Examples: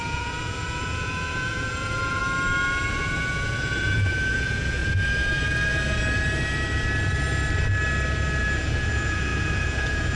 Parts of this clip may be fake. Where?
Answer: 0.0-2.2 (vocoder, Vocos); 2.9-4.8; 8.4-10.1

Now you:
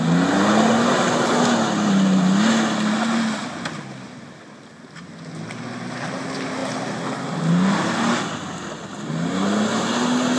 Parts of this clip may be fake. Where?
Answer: none

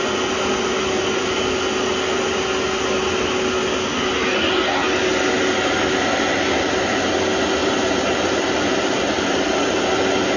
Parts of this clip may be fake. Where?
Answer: 7.6-10.0 (vocoder, BigVGAN v2)

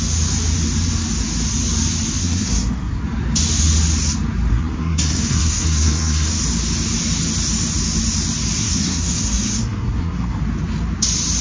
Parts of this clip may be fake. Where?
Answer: 2.2-3.0 (codec, SNAC); 4.5-6.4; 8.6-10.4

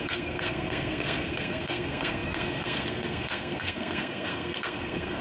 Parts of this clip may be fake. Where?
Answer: 0.0-5.2 (codec, SNAC)

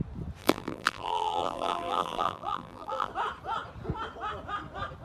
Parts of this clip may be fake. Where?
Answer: 0.4-3.1 (vocoder, BigVGAN v2)

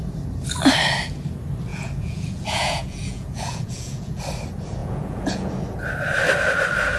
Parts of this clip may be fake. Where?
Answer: 1.7-4.2 (vocoder, Vocos); 4.8-5.5